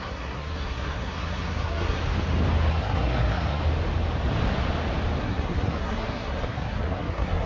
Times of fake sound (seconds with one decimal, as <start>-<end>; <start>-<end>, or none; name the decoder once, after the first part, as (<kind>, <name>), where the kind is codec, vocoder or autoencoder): 0.0-2.0 (codec, SNAC); 2.7-3.6; 5.2-7.5